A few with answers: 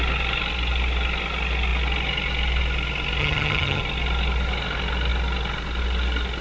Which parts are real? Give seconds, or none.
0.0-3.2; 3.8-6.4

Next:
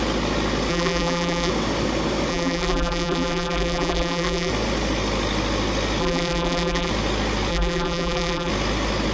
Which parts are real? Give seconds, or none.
0.0-0.7; 1.5-2.3; 4.5-6.0; 6.9-7.5; 8.5-9.1

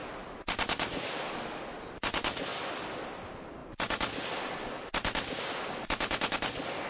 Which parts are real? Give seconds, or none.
0.0-6.9